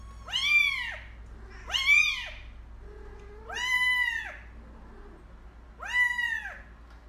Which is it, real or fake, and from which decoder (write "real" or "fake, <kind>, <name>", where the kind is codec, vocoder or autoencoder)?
real